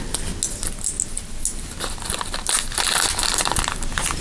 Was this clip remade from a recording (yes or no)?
no